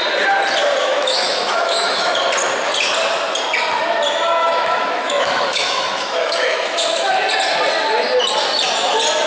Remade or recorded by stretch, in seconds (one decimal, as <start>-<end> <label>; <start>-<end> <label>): 0.0-0.8 recorded; 0.8-2.2 remade; 2.2-4.4 recorded; 4.4-7.1 remade; 7.1-9.3 recorded